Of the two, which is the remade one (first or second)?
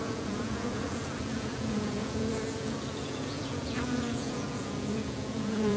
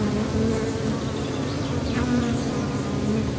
first